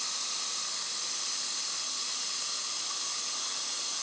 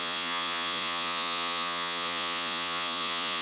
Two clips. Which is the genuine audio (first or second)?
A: first